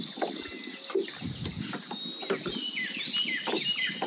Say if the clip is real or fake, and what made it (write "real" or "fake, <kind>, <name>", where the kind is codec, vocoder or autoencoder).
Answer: real